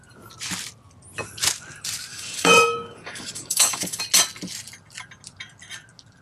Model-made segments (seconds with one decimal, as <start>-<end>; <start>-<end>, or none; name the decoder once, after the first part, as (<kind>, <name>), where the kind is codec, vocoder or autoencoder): 2.1-4.0 (codec, DAC)